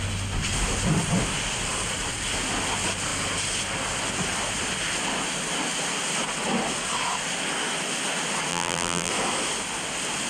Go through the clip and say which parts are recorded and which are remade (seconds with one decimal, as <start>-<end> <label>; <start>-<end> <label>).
0.0-8.5 recorded; 8.5-9.1 remade; 9.1-10.3 recorded